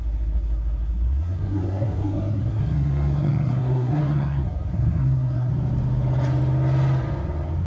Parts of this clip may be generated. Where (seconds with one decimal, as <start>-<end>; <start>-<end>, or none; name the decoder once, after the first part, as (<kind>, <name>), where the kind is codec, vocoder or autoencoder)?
0.0-5.5 (codec, SNAC)